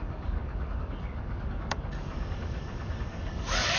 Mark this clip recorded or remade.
remade